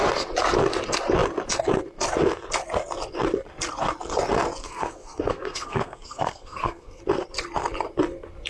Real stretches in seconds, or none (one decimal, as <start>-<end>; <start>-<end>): 0.0-4.6; 7.0-8.5

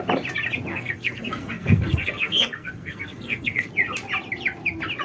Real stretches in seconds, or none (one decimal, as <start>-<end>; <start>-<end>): 0.0-0.7; 3.7-5.0

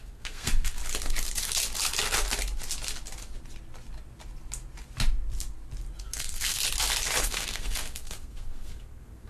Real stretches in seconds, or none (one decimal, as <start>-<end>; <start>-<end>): 0.8-6.0; 6.6-7.2

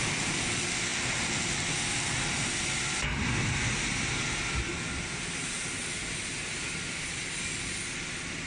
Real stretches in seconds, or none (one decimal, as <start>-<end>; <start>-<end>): 0.0-8.5

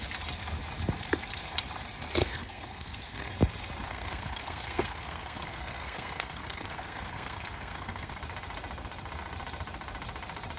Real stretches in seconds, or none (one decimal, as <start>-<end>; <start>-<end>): 0.0-2.2; 3.3-3.9; 8.2-10.6